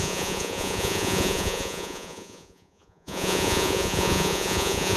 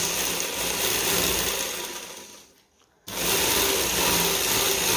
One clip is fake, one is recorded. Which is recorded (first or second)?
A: second